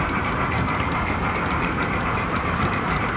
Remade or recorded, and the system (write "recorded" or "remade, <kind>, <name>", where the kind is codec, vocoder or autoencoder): remade, vocoder, BigVGAN v2